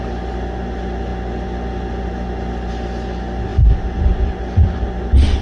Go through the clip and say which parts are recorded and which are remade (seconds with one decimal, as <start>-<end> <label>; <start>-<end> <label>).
0.0-5.4 recorded